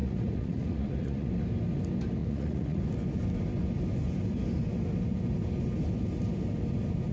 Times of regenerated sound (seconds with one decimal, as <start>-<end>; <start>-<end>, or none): 0.0-1.3; 2.2-2.8